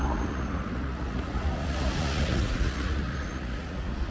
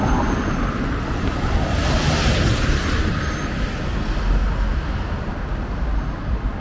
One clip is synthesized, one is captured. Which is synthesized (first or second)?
first